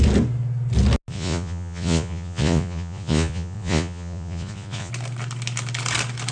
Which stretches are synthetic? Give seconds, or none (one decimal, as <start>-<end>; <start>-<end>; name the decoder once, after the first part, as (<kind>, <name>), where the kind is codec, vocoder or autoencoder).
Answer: 1.1-4.9 (vocoder, Vocos)